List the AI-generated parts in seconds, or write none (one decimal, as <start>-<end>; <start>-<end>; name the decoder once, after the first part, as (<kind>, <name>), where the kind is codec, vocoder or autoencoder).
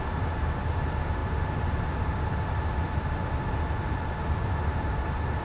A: none